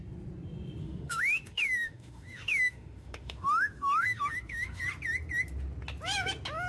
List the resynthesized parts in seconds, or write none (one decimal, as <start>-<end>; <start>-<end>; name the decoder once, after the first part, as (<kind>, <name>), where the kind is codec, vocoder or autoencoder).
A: 0.8-4.8 (autoencoder, DAC-VAE)